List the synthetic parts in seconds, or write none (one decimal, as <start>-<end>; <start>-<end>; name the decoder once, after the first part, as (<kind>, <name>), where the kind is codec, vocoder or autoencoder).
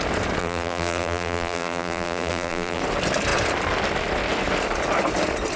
0.4-2.8 (vocoder, BigVGAN v2)